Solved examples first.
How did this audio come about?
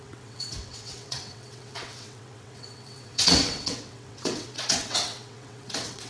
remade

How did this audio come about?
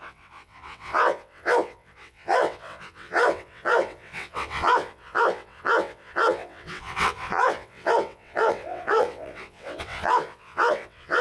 remade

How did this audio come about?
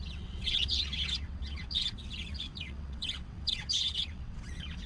remade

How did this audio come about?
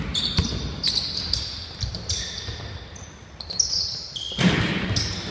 recorded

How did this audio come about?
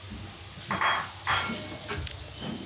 recorded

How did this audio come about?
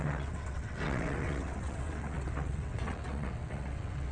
remade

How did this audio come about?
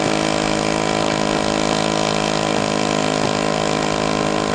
recorded